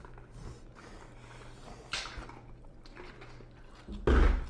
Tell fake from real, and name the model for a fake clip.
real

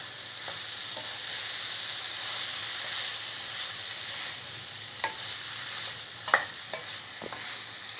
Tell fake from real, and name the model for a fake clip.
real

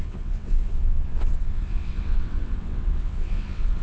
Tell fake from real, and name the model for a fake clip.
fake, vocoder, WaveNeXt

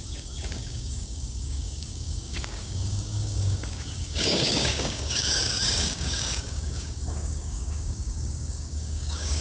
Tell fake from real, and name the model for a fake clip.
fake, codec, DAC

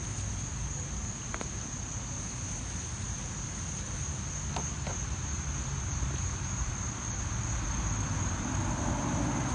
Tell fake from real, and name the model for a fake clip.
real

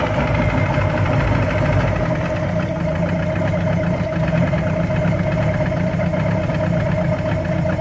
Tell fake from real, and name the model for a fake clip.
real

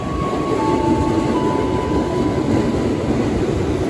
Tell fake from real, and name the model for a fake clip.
real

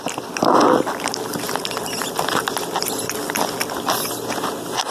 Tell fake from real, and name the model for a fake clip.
real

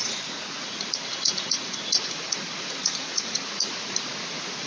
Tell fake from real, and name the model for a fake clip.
fake, vocoder, Vocos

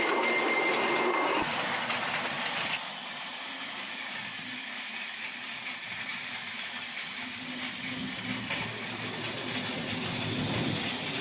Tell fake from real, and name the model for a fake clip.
real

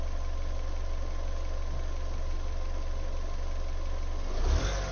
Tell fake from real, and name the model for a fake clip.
real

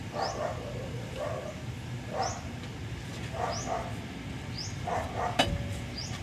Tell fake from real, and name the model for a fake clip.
real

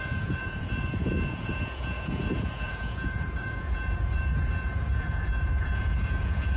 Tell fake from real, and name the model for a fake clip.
fake, vocoder, Vocos